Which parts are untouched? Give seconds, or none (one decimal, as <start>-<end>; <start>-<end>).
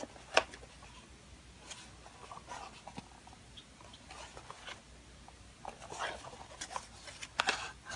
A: 0.0-8.0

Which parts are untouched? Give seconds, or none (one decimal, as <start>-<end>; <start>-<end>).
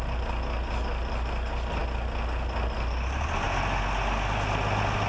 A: 0.0-5.1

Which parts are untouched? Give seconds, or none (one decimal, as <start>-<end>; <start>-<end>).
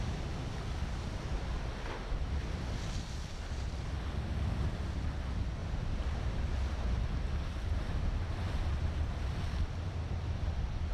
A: 0.0-5.6; 8.0-10.9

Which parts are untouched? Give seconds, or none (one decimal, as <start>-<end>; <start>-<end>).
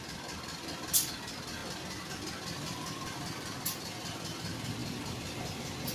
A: 0.0-5.9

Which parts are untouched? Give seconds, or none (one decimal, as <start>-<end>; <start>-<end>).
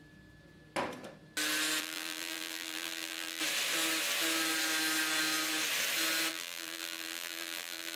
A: 0.0-1.8; 3.4-6.3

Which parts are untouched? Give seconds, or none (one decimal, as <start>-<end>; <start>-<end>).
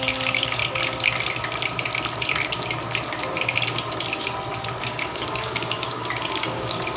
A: 0.6-4.8